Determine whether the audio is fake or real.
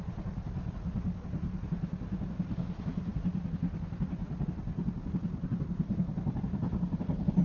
real